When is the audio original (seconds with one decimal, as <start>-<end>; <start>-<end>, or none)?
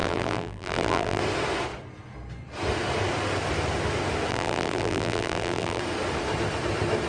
1.2-4.3; 5.8-7.1